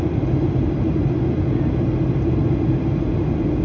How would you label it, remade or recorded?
recorded